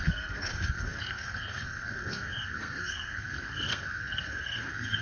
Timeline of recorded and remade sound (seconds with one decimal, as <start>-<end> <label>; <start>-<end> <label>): 0.0-5.0 remade